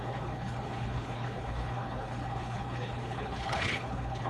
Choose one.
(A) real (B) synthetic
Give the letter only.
B